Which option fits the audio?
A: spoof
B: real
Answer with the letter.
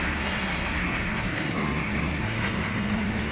A